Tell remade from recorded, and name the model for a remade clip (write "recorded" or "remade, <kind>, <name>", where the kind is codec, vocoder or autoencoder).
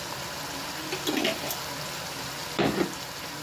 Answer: recorded